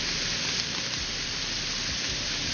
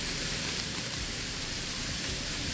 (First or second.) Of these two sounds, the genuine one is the first